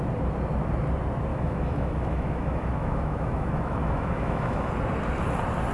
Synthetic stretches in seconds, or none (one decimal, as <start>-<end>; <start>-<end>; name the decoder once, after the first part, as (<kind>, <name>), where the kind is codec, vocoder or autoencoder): 1.3-4.7 (autoencoder, DAC-VAE)